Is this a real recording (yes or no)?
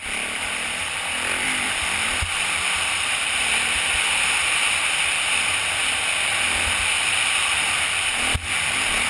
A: no